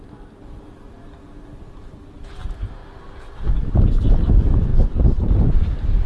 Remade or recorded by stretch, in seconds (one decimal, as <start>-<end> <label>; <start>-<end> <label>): 0.0-4.7 recorded; 4.7-6.1 remade